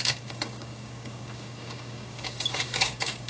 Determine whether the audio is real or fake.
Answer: fake